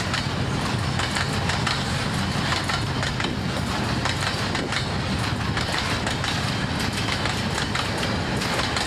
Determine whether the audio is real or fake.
real